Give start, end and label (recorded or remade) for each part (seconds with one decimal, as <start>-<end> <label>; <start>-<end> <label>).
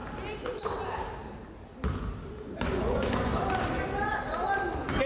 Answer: 0.0-2.5 recorded; 2.5-3.3 remade; 3.3-5.1 recorded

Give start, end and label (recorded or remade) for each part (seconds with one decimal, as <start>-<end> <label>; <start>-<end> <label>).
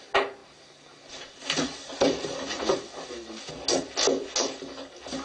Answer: 0.0-5.2 recorded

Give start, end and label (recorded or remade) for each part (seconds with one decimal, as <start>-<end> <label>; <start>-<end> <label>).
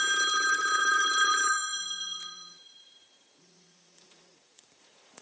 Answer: 0.0-0.5 recorded; 0.5-5.2 remade